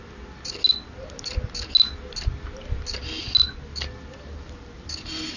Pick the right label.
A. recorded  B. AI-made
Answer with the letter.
A